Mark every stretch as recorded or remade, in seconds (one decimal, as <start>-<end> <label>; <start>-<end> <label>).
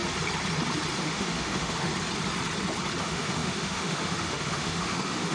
0.0-1.0 recorded; 1.0-1.9 remade; 1.9-3.0 recorded; 3.0-5.3 remade